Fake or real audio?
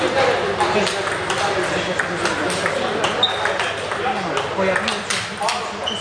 real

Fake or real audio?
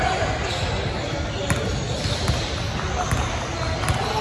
real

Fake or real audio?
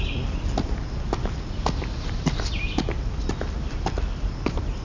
real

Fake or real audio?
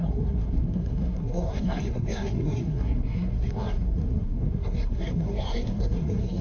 fake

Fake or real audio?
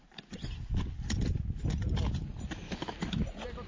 real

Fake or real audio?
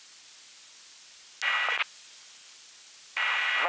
real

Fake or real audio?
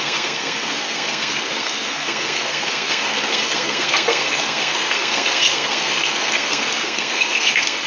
fake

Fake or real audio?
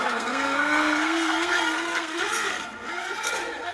fake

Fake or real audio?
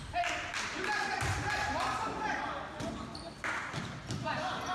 real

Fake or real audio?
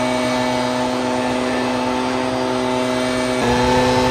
real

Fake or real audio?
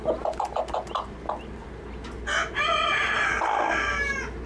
real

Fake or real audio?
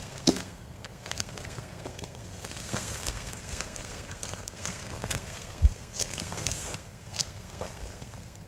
fake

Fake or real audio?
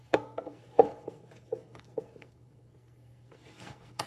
fake